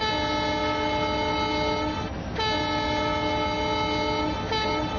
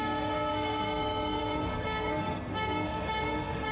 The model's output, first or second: second